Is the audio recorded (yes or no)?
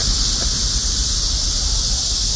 yes